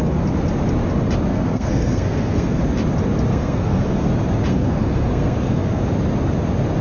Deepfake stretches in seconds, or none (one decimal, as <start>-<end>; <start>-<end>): 1.3-2.6; 3.3-4.1; 4.5-5.8